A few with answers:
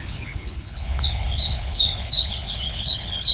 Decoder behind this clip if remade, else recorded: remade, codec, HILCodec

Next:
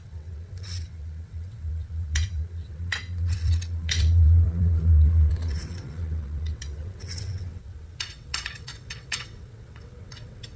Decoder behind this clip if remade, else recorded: remade, vocoder, WaveNeXt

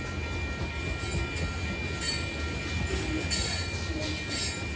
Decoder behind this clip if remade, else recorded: recorded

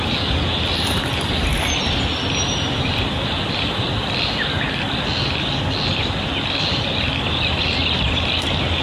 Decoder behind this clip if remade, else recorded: recorded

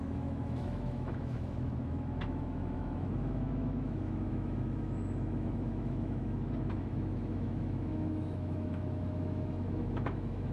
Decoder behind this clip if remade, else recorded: remade, autoencoder, DAC-VAE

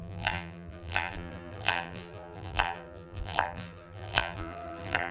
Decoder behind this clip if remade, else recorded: remade, vocoder, BigVGAN v2